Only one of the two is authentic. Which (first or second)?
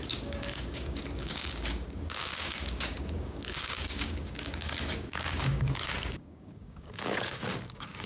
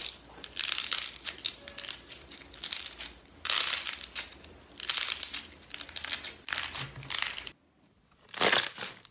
second